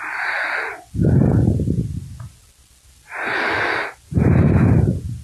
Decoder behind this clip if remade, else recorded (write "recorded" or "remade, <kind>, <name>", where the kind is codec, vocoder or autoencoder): recorded